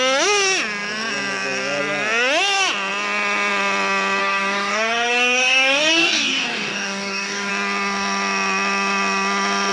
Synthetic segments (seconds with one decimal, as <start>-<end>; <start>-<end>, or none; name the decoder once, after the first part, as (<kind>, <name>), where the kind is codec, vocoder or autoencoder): 4.2-7.5 (codec, DAC)